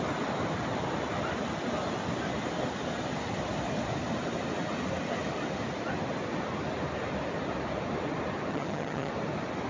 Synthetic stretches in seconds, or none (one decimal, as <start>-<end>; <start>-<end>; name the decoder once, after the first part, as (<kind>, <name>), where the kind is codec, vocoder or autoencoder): 8.5-9.1 (vocoder, HiFi-GAN)